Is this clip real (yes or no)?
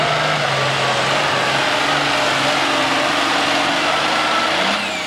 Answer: yes